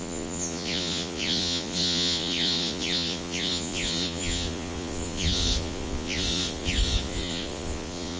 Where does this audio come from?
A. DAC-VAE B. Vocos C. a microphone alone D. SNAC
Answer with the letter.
B